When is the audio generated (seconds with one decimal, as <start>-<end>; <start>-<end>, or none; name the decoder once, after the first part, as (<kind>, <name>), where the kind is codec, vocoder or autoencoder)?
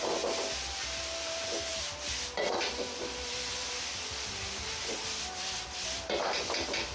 none